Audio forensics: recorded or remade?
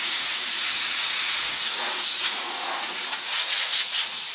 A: remade